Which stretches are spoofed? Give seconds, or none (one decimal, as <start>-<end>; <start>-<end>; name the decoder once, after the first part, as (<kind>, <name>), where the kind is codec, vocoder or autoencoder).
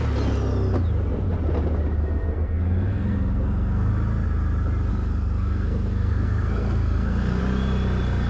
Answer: 2.0-3.9 (codec, SNAC); 4.9-7.4